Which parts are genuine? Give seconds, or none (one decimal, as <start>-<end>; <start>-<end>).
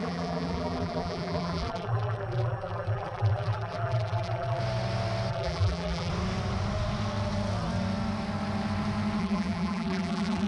4.6-5.3; 6.1-9.2